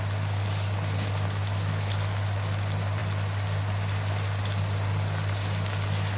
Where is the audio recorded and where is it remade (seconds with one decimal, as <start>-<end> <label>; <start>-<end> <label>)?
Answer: 0.0-6.2 recorded

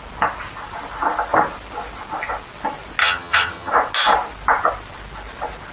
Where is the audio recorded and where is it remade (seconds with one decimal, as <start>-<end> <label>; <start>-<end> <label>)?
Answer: 0.0-3.0 recorded; 3.0-3.7 remade; 3.7-5.7 recorded

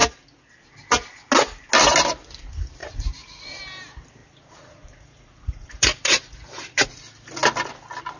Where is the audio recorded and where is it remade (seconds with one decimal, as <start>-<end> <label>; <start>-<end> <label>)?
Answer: 0.0-2.8 recorded; 2.8-3.6 remade; 3.6-4.2 recorded; 4.2-7.0 remade; 7.0-8.2 recorded

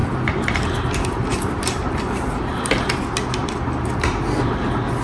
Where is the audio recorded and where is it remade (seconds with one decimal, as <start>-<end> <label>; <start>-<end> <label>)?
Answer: 0.0-3.0 remade; 3.0-3.4 recorded; 3.4-4.5 remade; 4.5-5.0 recorded

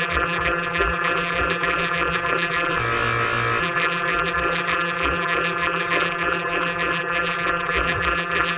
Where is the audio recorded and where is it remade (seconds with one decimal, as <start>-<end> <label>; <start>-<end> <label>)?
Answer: 0.0-2.8 remade; 2.8-3.6 recorded; 3.6-8.6 remade

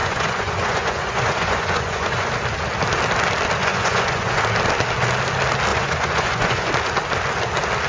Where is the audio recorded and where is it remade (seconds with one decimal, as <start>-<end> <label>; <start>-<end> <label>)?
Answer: 0.0-2.3 remade; 2.3-3.6 recorded; 3.6-4.4 remade; 4.4-5.7 recorded; 5.7-6.7 remade; 6.7-7.9 recorded

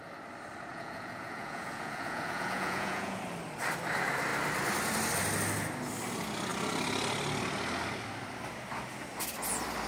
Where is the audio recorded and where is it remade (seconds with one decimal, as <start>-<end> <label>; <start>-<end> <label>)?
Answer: 0.0-0.7 recorded; 0.7-3.2 remade; 3.2-9.9 recorded